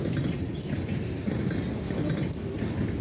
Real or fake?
real